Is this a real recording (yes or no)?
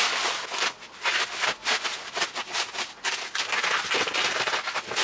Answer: yes